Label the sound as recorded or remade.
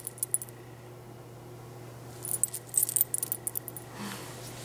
recorded